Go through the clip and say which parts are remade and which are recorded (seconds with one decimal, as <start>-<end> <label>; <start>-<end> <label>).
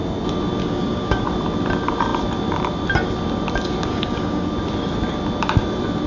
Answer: 0.0-0.6 recorded; 0.6-1.3 remade; 1.3-3.9 recorded; 3.9-4.5 remade; 4.5-6.1 recorded